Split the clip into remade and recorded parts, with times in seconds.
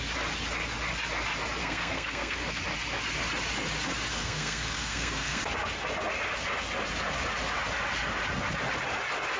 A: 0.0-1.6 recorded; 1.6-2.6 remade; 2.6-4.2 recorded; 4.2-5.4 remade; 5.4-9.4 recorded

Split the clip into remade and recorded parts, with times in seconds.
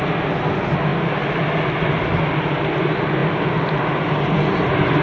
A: 0.0-3.2 recorded; 3.2-5.0 remade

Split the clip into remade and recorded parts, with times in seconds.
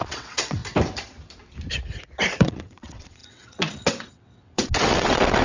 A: 0.0-0.6 remade; 0.6-2.3 recorded; 2.3-5.4 remade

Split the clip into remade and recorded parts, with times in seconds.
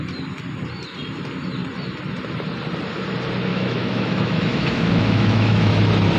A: 0.0-3.5 recorded; 3.5-5.7 remade; 5.7-6.2 recorded